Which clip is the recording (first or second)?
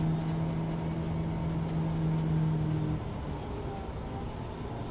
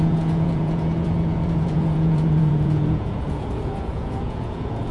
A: first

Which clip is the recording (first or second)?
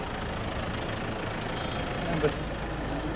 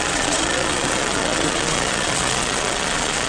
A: first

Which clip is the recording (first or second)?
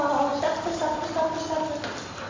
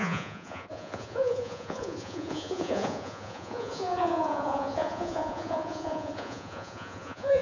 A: first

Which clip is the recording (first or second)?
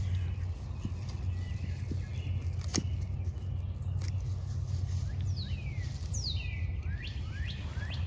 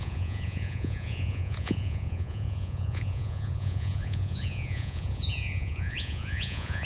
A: first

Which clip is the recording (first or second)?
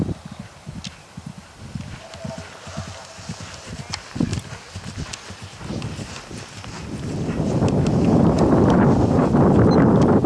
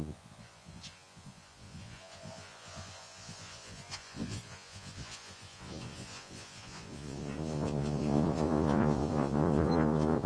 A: first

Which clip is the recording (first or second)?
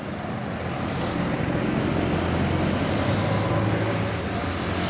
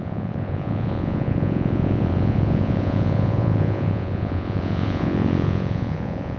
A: first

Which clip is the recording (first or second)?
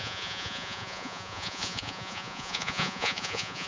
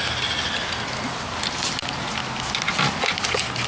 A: second